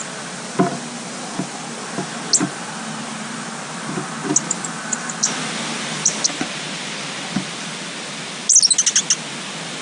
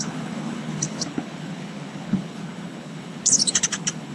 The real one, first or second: first